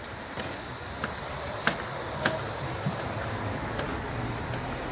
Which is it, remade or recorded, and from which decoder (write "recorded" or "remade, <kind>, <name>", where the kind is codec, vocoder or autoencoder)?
recorded